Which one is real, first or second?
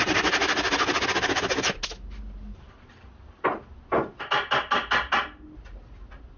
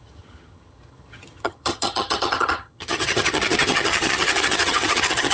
first